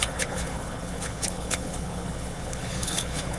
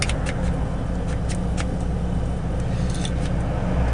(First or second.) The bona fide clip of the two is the second